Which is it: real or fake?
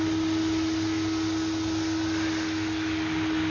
real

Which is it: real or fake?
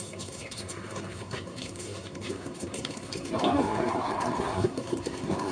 fake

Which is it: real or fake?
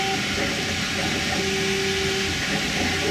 real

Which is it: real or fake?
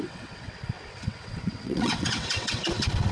fake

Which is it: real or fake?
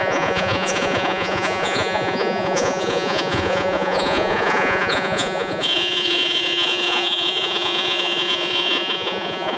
fake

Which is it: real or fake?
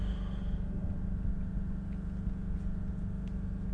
real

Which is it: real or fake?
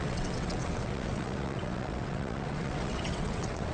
fake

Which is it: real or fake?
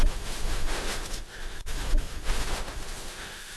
fake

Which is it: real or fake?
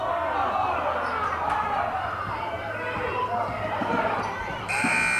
real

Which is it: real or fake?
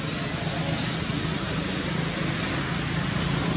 real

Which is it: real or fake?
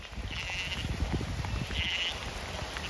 real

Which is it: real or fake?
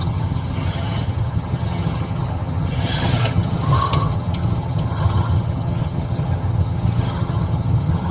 fake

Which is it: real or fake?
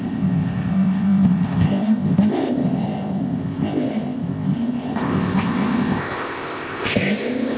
fake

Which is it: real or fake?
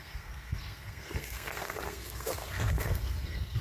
fake